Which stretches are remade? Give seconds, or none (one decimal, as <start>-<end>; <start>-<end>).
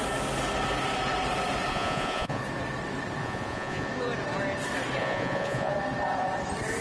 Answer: 1.7-2.4; 3.2-3.9; 5.0-5.7